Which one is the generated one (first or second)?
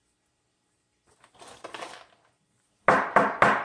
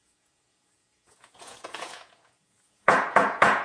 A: second